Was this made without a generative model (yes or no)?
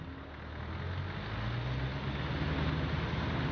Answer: yes